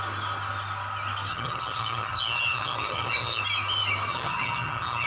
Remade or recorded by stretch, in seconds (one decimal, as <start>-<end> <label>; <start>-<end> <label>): 0.0-1.3 recorded; 1.3-3.4 remade; 3.4-4.1 recorded; 4.1-5.1 remade